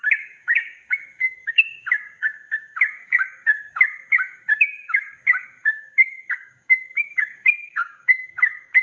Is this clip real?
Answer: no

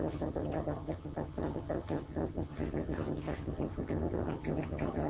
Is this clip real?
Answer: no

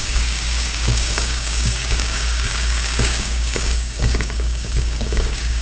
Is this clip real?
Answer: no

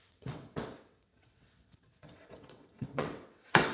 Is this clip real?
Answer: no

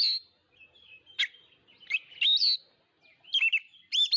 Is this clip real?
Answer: yes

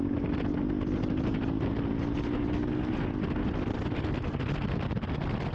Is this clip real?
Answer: yes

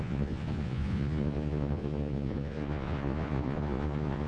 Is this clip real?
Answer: no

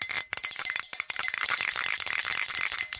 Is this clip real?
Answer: yes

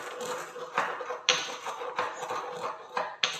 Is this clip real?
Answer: yes